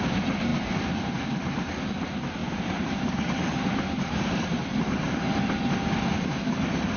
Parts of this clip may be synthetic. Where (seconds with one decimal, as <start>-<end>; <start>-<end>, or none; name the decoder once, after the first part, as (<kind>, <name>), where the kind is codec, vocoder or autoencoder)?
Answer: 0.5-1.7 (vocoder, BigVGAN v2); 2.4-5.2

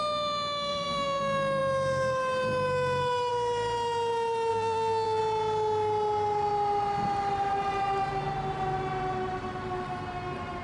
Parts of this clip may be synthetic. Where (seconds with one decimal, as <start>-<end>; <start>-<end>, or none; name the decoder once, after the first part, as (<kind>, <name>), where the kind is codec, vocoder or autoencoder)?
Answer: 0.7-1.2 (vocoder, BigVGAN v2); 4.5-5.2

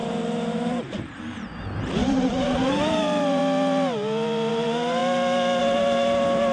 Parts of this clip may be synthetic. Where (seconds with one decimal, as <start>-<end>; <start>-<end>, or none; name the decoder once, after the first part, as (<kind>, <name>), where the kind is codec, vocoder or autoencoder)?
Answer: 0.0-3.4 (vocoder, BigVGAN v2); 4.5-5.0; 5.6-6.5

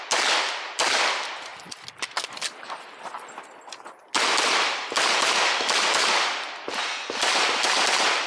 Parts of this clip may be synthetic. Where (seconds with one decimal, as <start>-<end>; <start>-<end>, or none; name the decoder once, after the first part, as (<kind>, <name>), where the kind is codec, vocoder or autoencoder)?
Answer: none